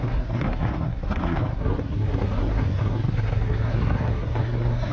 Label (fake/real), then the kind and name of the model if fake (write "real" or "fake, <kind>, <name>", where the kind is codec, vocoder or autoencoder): fake, codec, SNAC